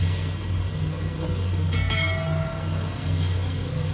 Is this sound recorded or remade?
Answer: remade